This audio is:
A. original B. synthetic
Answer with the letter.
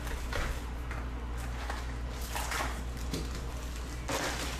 A